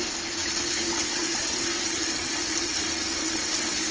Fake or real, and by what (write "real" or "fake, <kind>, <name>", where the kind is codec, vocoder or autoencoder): real